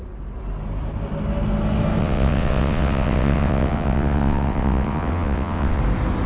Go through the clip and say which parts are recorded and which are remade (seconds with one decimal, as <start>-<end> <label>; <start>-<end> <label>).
0.0-2.0 recorded; 2.0-5.8 remade; 5.8-6.3 recorded